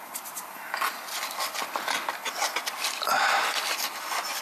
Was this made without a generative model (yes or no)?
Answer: yes